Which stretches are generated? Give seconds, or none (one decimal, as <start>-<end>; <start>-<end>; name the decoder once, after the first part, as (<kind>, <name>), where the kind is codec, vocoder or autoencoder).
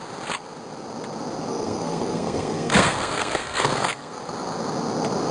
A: 1.5-4.2 (codec, SNAC)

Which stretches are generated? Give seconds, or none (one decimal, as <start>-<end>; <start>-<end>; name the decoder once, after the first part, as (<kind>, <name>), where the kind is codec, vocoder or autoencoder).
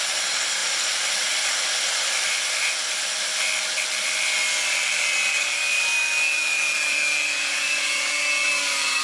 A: 5.3-9.0 (codec, DAC)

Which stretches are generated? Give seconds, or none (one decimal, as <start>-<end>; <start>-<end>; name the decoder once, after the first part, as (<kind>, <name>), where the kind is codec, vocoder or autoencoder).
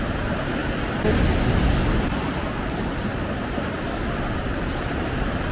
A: 0.0-0.6 (vocoder, BigVGAN v2); 2.5-3.1; 4.2-5.5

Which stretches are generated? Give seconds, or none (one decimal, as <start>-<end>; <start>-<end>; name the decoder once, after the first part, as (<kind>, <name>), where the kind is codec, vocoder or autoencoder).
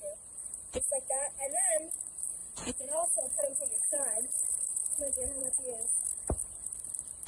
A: 0.4-1.7 (vocoder, Vocos); 2.4-6.8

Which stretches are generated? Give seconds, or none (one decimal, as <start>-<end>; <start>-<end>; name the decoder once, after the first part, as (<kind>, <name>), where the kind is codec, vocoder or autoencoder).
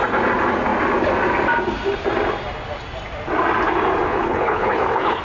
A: 4.1-5.2 (codec, HILCodec)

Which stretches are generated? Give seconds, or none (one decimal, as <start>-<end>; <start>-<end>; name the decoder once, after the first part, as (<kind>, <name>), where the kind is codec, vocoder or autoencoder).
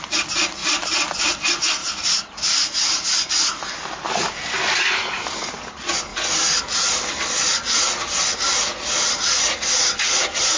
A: 0.6-1.2 (vocoder, BigVGAN v2); 1.8-5.5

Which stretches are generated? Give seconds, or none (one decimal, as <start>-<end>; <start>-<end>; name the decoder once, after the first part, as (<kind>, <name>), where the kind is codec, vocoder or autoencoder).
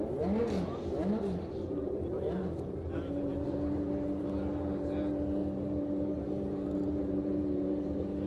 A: 1.0-2.3 (vocoder, BigVGAN v2); 5.4-8.3